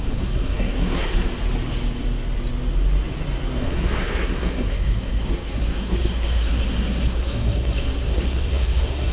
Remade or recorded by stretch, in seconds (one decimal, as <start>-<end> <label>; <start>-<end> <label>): 0.0-1.3 remade; 1.3-3.6 recorded; 3.6-9.1 remade